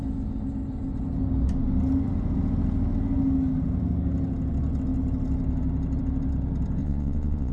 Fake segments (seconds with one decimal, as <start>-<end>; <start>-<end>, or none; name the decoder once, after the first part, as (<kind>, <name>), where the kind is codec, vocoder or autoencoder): 6.8-7.5 (vocoder, Vocos)